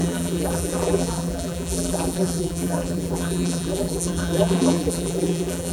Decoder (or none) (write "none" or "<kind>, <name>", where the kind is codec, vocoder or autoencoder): vocoder, BigVGAN v2